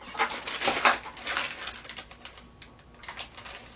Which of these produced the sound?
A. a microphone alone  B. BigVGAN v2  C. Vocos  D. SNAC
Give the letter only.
A